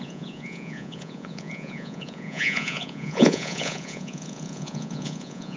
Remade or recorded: remade